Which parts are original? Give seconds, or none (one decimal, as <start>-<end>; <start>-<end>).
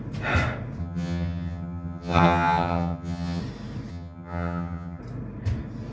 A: 0.0-0.8; 3.4-3.9; 5.0-5.9